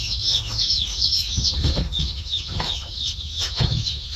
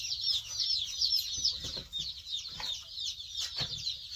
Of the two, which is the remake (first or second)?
first